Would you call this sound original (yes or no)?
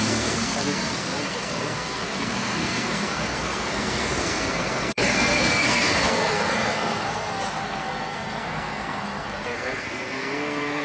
no